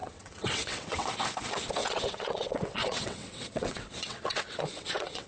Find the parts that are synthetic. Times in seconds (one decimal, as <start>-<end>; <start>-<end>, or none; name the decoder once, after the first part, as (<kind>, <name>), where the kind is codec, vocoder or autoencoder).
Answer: 0.0-1.1 (vocoder, WaveNeXt); 1.8-5.3